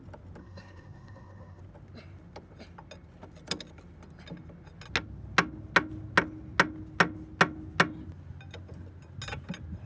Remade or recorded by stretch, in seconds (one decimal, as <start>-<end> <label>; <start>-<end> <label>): 0.0-0.4 recorded; 0.4-1.6 remade; 1.6-9.9 recorded